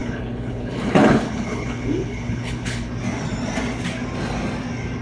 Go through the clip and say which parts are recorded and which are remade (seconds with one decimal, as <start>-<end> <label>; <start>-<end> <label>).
0.0-2.9 remade; 2.9-5.0 recorded